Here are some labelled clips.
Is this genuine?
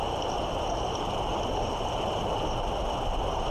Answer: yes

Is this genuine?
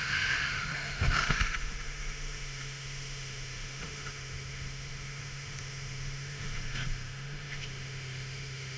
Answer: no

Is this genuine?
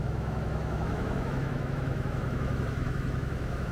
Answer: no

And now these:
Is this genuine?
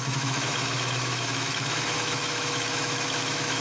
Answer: no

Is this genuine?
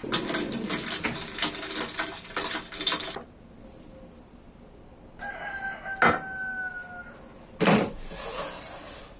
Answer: yes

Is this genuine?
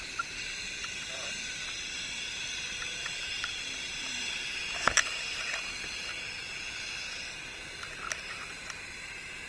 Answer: yes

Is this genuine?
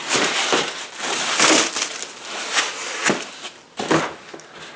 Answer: yes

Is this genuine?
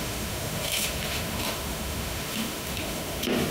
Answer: no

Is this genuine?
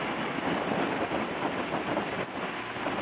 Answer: yes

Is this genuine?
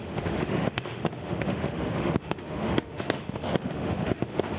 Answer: no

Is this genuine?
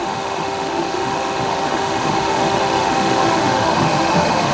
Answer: no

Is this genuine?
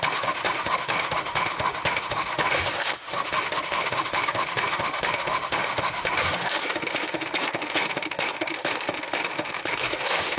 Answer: no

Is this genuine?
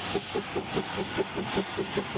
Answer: yes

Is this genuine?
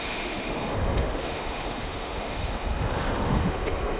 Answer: no